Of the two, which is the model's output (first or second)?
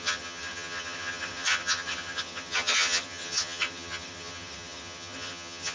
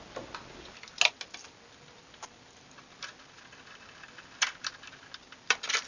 first